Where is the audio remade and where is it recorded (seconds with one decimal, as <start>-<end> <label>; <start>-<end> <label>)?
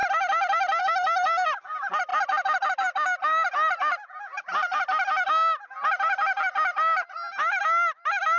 0.0-8.4 recorded